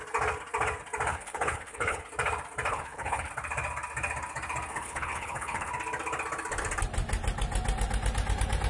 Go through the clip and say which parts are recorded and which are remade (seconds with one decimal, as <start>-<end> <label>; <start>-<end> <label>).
0.0-1.1 recorded; 1.1-2.0 remade; 2.0-2.7 recorded; 2.7-3.3 remade; 3.3-4.7 recorded; 4.7-5.7 remade; 5.7-8.7 recorded